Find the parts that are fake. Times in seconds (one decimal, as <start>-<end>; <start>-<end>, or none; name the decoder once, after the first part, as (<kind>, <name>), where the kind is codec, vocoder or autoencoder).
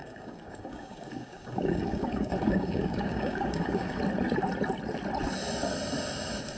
0.0-4.0 (codec, DAC)